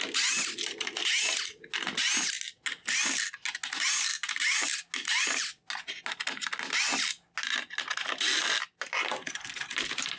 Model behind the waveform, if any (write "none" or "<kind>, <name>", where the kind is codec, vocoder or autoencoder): none